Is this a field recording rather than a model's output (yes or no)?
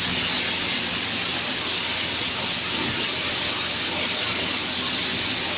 yes